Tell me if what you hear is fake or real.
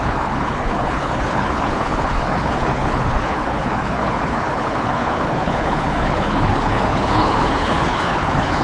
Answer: fake